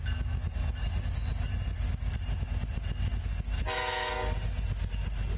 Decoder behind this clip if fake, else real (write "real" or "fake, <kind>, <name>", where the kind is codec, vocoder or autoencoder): real